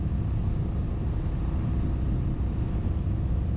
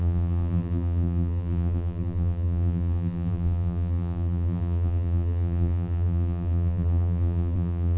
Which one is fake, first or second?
second